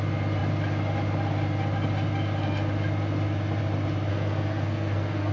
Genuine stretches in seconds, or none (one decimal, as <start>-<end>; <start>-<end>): 0.0-4.1